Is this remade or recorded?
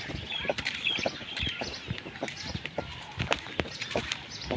recorded